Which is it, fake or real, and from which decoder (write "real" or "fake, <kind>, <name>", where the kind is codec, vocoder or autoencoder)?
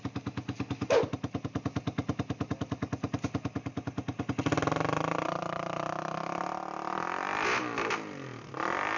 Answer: real